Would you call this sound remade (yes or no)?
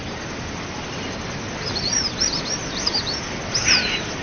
yes